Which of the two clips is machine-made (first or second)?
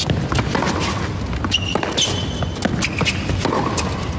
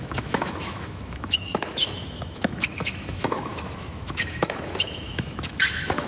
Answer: second